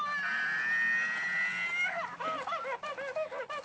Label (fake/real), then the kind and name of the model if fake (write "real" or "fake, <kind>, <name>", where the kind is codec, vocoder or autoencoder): real